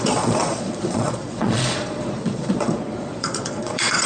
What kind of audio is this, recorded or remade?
remade